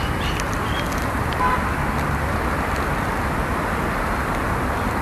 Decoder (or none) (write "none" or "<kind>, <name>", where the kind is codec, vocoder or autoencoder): none